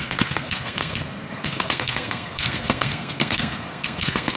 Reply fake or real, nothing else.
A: fake